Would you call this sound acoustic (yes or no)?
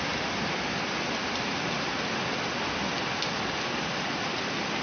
yes